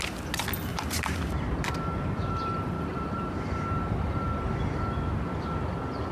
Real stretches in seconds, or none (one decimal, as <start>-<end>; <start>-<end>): 0.0-0.7; 4.4-6.1